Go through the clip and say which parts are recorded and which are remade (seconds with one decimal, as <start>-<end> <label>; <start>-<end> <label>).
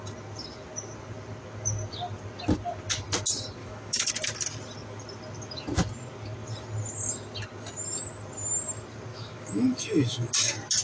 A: 0.0-3.6 recorded; 3.6-4.1 remade; 4.1-9.1 recorded; 9.1-10.3 remade; 10.3-10.8 recorded